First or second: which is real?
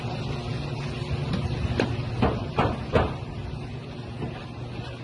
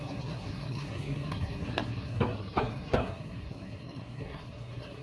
first